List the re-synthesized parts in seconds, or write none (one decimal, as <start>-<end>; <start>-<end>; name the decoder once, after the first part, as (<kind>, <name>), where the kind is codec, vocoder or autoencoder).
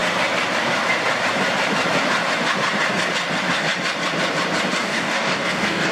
4.8-5.9 (codec, DAC)